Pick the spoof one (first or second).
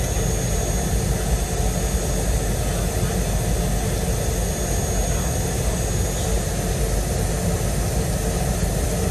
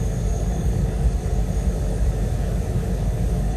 second